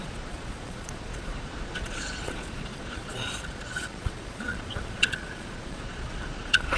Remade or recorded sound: remade